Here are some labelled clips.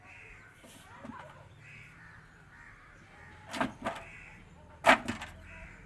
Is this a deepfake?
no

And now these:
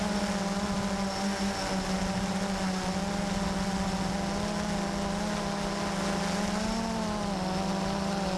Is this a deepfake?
no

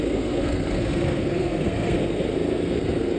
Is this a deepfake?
yes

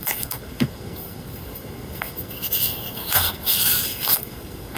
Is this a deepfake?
yes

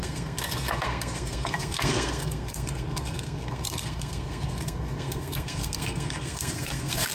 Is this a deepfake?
yes